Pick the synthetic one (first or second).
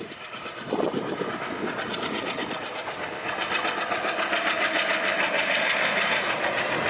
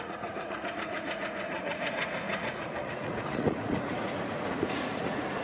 second